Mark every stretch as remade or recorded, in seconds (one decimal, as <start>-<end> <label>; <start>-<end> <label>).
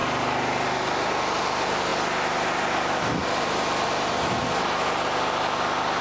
0.0-6.0 recorded